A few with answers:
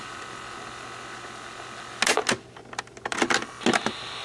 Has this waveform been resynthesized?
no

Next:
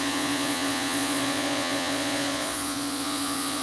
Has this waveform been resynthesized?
yes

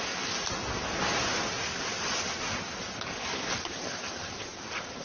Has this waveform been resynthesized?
no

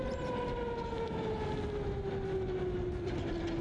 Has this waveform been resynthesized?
no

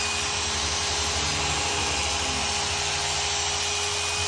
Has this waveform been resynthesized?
no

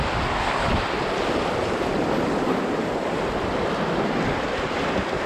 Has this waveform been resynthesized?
no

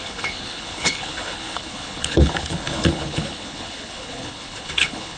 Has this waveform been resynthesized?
yes